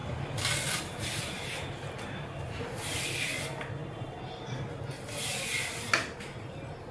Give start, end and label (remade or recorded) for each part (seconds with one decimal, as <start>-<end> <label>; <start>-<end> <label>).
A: 0.0-3.4 remade; 3.4-3.8 recorded; 3.8-5.1 remade; 5.1-6.9 recorded